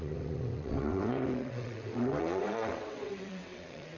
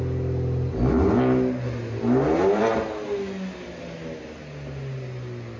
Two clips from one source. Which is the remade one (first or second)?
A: first